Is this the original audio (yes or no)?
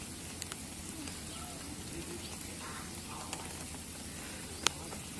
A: yes